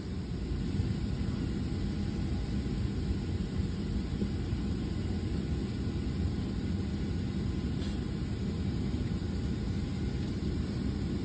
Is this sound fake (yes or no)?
no